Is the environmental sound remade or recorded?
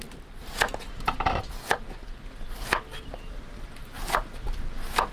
recorded